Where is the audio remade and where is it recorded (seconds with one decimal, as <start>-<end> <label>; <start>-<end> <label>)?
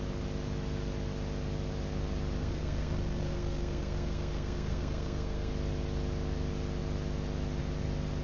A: 0.0-2.4 recorded; 2.4-5.5 remade; 5.5-8.2 recorded